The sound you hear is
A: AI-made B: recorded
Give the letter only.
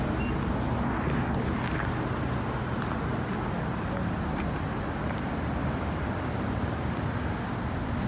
B